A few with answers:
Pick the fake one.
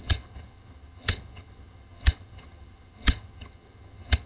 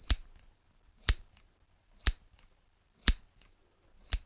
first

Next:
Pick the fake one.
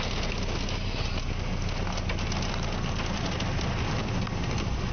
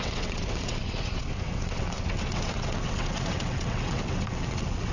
second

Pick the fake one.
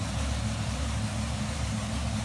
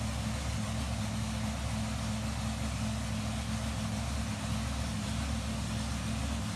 first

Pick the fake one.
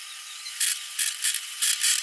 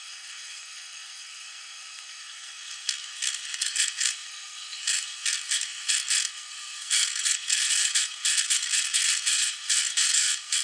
second